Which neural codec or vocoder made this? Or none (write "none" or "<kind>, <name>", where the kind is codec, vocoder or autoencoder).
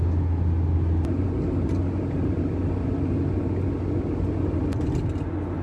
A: none